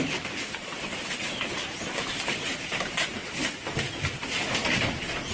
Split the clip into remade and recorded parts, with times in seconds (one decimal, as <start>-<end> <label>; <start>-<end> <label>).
0.0-3.2 remade; 3.2-4.8 recorded; 4.8-5.3 remade